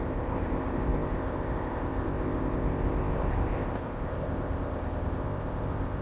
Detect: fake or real fake